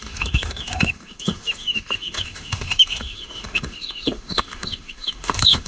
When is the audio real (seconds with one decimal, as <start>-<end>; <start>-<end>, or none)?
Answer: none